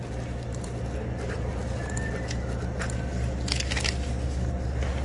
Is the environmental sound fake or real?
real